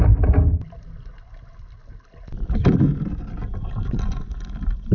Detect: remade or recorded recorded